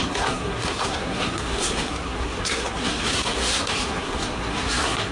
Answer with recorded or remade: remade